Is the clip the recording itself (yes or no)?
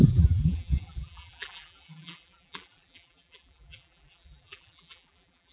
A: no